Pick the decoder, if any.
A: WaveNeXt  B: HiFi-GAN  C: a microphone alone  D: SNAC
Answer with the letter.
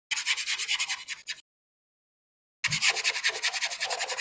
C